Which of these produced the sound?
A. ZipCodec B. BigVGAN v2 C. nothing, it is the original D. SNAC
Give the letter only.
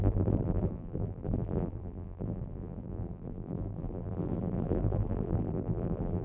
B